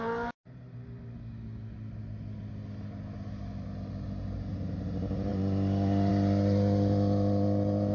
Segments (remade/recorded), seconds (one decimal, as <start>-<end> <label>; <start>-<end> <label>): 0.0-7.9 recorded